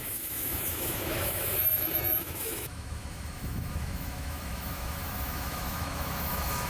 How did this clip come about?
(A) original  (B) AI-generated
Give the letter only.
B